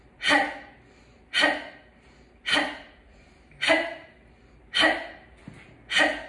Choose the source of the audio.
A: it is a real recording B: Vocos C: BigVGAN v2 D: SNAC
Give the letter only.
A